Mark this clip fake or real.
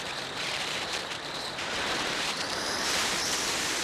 fake